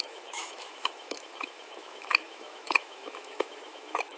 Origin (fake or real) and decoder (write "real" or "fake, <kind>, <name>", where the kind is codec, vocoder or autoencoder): fake, autoencoder, DAC-VAE